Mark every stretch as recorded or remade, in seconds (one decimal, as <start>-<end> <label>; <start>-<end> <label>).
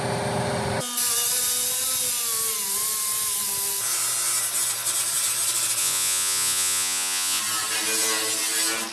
0.0-5.8 recorded; 5.8-7.4 remade; 7.4-8.9 recorded